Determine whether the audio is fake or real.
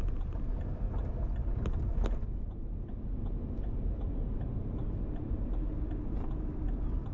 real